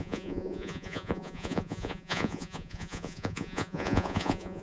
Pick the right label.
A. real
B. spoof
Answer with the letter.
B